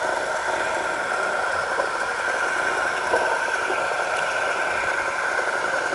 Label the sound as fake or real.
real